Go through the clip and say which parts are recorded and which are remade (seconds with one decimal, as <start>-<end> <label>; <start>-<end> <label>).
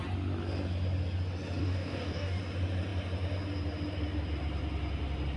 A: 0.0-1.6 recorded; 1.6-2.4 remade; 2.4-5.4 recorded